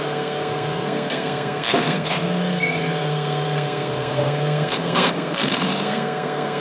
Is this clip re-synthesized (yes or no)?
yes